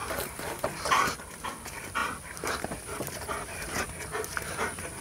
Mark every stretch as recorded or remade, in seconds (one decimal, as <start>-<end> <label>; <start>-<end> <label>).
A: 0.0-0.8 recorded; 0.8-5.0 remade